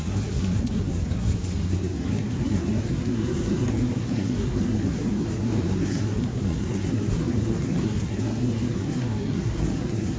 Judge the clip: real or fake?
fake